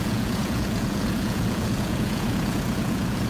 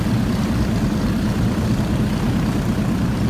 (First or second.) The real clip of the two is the second